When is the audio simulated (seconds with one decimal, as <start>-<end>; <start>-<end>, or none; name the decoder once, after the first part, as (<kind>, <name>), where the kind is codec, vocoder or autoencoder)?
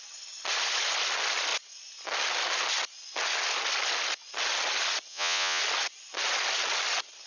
5.1-5.6 (vocoder, Vocos)